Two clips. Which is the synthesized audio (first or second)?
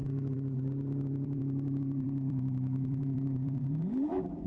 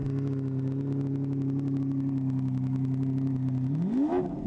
first